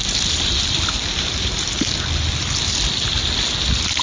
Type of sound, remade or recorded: recorded